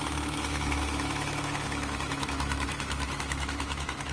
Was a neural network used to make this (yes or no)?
yes